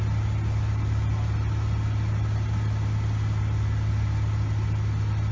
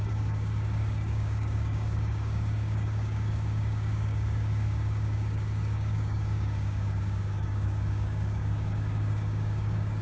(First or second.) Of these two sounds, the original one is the first